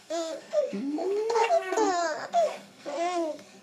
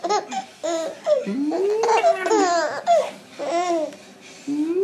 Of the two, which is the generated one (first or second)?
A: first